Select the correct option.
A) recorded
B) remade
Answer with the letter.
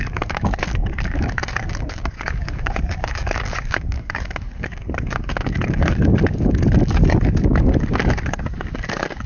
B